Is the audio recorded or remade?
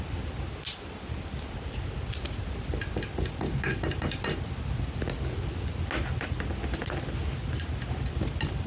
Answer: recorded